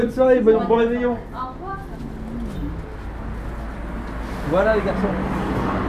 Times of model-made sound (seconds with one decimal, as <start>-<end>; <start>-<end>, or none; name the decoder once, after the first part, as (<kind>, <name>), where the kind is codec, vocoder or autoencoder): none